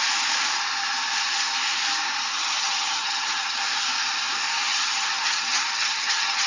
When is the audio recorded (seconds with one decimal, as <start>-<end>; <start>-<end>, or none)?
0.0-2.3; 3.6-4.7